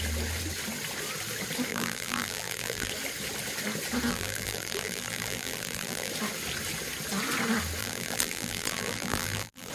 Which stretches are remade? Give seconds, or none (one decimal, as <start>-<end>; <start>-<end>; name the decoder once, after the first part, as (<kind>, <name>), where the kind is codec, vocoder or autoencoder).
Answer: 1.7-2.9 (vocoder, BigVGAN v2); 4.1-6.1; 7.8-9.7